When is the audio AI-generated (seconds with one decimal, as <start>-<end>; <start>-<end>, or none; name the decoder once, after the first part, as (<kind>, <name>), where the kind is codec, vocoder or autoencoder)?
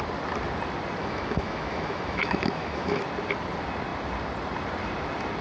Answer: 1.0-3.0 (autoencoder, DAC-VAE)